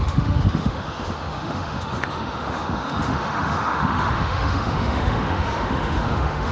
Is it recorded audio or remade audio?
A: remade